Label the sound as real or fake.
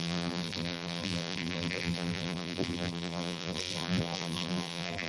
fake